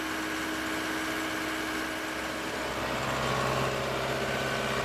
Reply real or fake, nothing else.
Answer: real